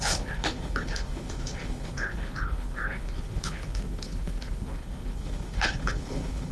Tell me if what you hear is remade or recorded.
remade